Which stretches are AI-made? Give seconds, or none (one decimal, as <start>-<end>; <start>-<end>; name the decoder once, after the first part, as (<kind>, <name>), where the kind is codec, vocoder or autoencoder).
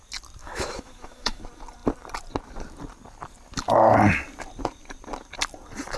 0.4-1.4 (autoencoder, DAC-VAE)